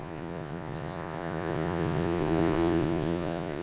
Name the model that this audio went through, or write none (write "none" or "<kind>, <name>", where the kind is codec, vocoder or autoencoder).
vocoder, Vocos